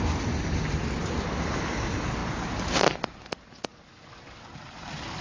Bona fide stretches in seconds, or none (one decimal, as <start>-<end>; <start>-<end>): 0.0-3.7; 4.8-5.2